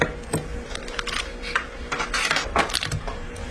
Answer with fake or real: real